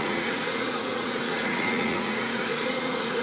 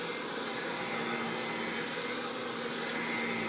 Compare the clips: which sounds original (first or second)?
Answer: second